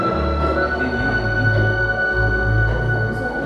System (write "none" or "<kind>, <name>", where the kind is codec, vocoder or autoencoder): none